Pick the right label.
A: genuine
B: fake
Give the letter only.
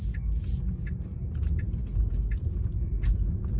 A